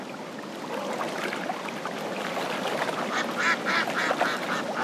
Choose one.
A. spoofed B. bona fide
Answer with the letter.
B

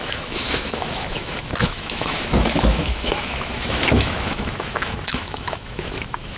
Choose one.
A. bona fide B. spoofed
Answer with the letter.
B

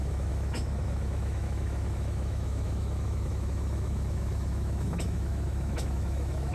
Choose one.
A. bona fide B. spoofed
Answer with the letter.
B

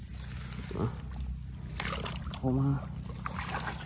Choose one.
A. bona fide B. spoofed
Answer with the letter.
A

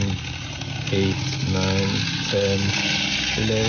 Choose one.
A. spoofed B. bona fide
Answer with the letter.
B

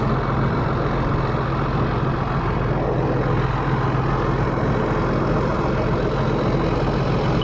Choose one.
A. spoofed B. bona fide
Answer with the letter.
B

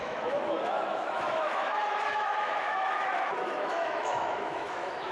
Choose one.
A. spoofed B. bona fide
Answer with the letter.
A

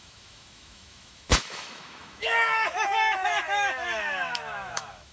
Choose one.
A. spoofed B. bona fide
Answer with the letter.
A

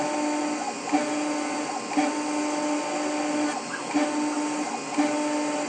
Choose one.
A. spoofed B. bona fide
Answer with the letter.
B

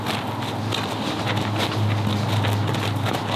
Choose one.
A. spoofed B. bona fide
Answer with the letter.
B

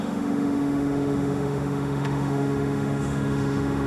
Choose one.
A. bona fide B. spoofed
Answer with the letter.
B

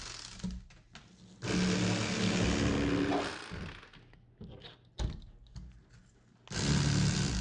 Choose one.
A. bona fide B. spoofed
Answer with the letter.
A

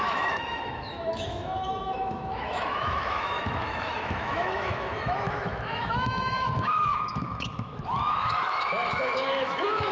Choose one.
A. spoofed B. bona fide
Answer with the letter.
A